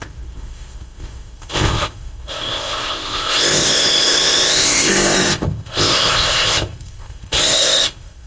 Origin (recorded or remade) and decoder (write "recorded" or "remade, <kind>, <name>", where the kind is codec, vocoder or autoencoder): remade, codec, ZipCodec